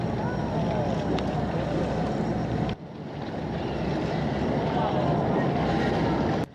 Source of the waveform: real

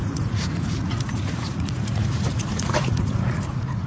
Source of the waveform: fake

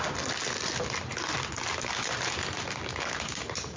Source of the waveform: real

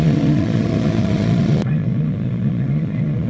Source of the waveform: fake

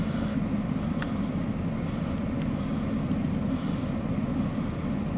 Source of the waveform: real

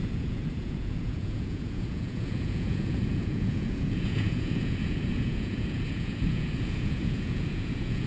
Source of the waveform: fake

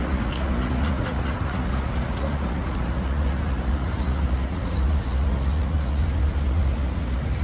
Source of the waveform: fake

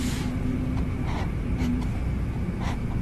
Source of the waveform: fake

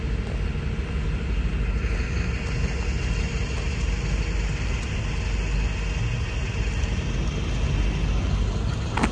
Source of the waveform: real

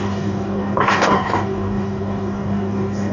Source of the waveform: fake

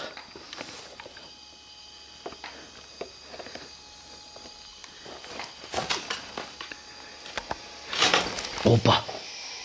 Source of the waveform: real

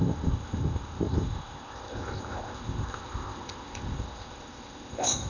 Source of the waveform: fake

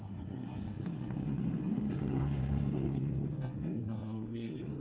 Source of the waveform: fake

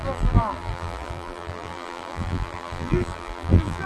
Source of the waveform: fake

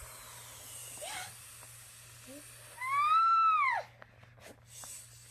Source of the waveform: real